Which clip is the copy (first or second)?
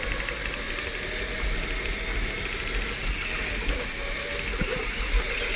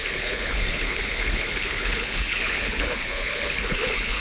second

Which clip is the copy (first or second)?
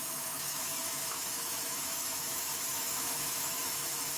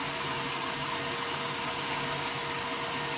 first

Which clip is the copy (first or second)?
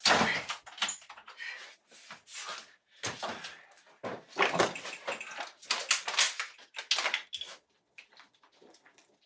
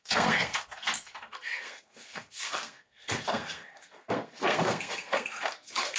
second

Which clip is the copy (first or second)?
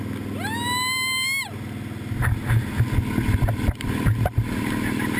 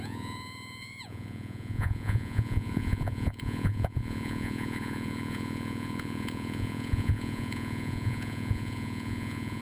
second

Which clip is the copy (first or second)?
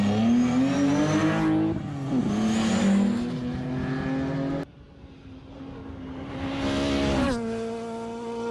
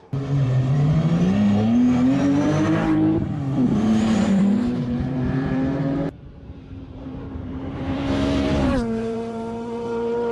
second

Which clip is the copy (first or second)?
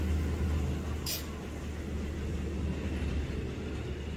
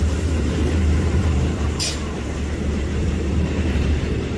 second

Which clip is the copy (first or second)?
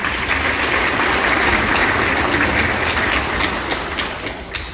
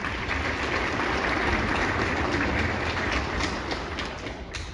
second